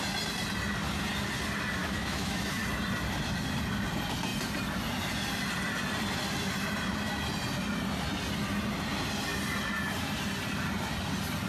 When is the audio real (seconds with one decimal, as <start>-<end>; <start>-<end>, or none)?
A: 0.0-1.8; 2.6-11.5